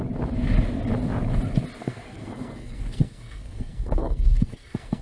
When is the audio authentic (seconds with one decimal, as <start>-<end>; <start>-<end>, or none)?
0.0-1.8